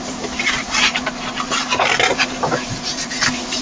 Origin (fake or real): fake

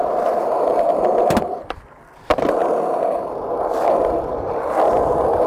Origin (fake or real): real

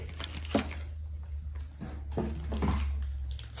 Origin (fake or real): real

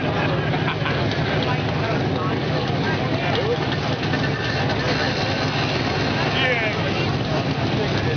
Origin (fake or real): real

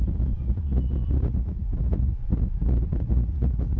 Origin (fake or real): fake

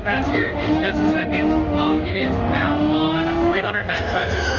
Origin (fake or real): fake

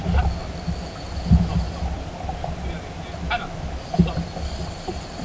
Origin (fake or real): real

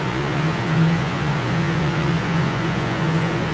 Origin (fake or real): fake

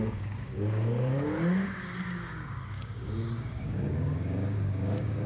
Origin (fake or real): fake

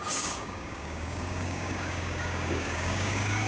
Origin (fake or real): fake